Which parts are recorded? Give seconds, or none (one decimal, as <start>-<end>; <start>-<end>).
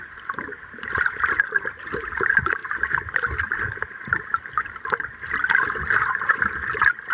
none